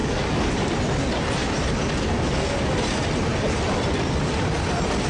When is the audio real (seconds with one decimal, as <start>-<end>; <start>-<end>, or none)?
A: 0.7-5.1